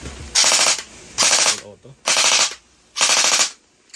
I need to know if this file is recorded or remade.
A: recorded